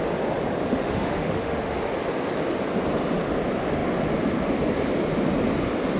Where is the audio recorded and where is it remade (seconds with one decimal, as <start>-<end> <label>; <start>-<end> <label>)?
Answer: 0.0-0.6 recorded; 0.6-1.8 remade; 1.8-6.0 recorded